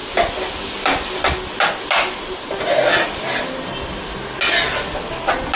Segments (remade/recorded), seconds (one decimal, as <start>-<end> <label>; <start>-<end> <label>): 0.0-5.6 recorded

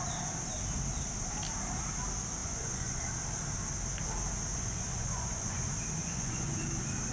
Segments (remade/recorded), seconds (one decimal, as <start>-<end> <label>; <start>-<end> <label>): 0.0-2.4 recorded; 2.4-3.0 remade; 3.0-4.5 recorded; 4.5-5.6 remade; 5.6-6.0 recorded; 6.0-6.6 remade; 6.6-7.1 recorded

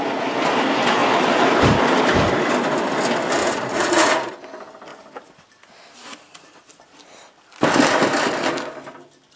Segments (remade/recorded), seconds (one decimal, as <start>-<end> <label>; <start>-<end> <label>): 0.0-3.4 recorded; 3.4-4.3 remade; 4.3-9.4 recorded

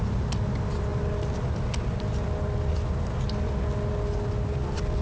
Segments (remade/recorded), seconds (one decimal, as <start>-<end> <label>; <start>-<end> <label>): 0.0-5.0 recorded